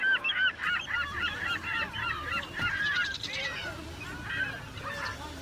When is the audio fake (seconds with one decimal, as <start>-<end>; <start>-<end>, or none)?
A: 0.6-3.8